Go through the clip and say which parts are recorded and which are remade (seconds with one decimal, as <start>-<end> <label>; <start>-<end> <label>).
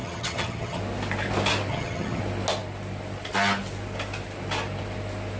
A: 0.0-0.8 remade; 0.8-1.7 recorded; 1.7-2.2 remade; 2.2-5.4 recorded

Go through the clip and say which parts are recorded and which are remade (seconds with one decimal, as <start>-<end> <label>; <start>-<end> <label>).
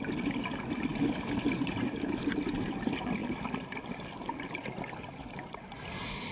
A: 0.0-6.3 recorded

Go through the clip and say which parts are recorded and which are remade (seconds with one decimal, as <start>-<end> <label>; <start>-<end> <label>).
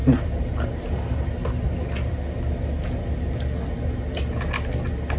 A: 0.0-5.2 recorded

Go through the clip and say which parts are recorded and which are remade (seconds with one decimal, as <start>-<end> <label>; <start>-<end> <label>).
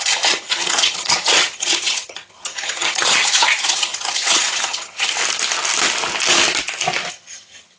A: 0.0-5.2 remade; 5.2-7.1 recorded; 7.1-7.8 remade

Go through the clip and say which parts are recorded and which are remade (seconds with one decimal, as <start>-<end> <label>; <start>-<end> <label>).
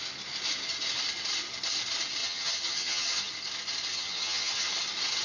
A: 0.0-2.2 recorded; 2.2-3.3 remade; 3.3-3.9 recorded; 3.9-4.7 remade; 4.7-5.2 recorded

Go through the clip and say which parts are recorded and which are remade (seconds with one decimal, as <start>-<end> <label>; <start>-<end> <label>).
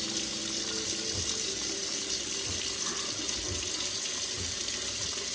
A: 0.0-5.3 recorded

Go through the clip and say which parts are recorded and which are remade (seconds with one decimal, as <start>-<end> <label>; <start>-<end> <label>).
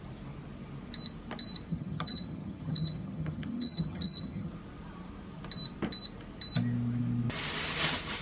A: 0.0-1.7 recorded; 1.7-4.5 remade; 4.5-8.2 recorded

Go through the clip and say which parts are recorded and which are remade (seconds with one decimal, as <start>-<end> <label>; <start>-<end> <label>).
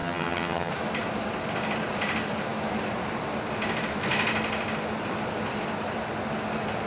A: 0.0-0.7 remade; 0.7-6.9 recorded